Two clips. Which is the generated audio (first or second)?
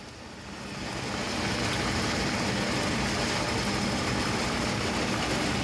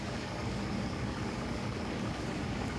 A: second